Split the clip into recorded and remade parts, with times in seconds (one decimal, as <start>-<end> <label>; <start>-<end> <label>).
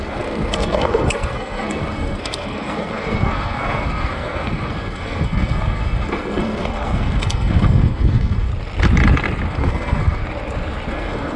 0.0-8.5 remade; 8.5-9.5 recorded; 9.5-10.2 remade; 10.2-10.9 recorded; 10.9-11.4 remade